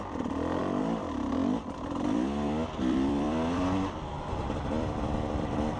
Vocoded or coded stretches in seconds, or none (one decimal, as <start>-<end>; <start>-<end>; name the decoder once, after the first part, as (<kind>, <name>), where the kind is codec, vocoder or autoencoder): 0.0-5.8 (vocoder, BigVGAN v2)